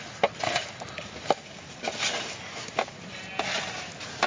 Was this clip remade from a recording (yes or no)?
no